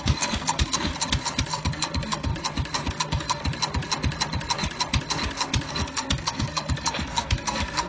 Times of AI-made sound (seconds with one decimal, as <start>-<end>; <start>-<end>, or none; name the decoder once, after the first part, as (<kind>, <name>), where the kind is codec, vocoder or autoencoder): 0.0-0.9 (codec, SNAC); 1.5-2.3; 2.9-3.4; 5.7-7.9